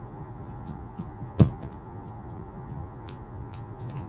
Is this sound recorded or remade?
remade